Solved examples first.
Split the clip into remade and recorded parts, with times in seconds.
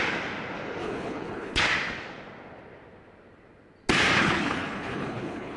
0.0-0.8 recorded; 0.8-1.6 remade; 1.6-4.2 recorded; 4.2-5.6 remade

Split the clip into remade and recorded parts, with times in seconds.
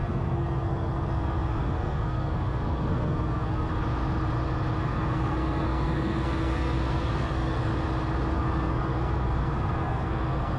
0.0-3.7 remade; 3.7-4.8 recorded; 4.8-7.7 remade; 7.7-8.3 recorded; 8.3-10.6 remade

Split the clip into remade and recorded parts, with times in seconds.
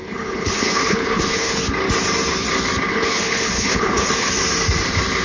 0.0-1.6 remade; 1.6-2.9 recorded; 2.9-4.3 remade; 4.3-5.2 recorded